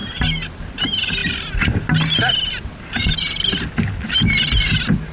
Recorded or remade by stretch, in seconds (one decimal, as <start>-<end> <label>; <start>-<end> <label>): 0.0-5.1 recorded